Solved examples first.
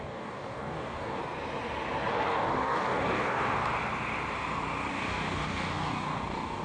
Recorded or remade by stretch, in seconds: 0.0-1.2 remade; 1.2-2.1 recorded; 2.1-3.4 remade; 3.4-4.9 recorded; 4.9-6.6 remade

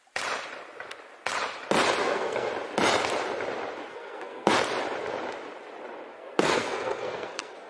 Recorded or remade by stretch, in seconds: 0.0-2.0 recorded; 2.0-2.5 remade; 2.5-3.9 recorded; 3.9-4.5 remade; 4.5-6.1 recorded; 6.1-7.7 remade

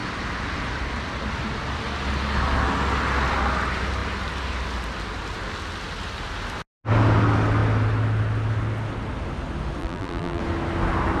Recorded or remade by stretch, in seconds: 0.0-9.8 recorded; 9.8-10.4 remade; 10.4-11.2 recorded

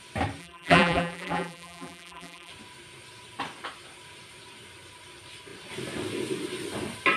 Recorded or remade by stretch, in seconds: 0.0-0.4 recorded; 0.4-2.5 remade; 2.5-7.2 recorded

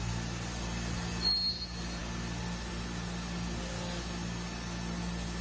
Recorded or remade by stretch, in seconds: 0.0-5.4 recorded

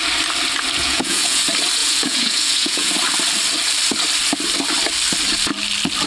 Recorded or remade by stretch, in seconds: 0.0-0.8 recorded; 0.8-1.4 remade; 1.4-1.8 recorded; 1.8-2.9 remade; 2.9-6.1 recorded

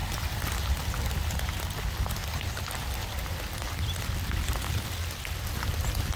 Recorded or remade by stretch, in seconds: 0.0-6.2 recorded